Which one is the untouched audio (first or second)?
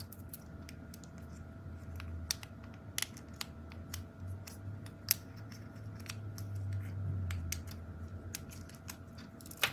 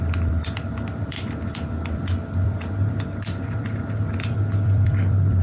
first